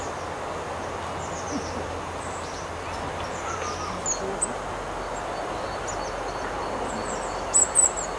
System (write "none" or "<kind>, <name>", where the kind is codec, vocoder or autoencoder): none